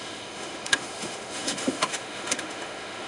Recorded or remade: remade